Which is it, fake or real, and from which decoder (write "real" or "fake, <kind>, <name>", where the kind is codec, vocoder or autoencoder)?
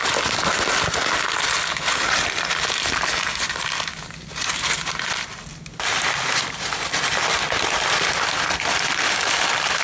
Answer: real